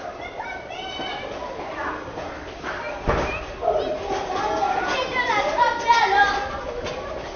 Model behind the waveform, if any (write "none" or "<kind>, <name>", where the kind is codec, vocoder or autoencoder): none